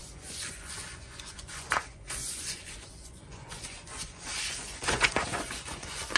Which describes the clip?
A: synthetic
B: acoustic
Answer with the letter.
A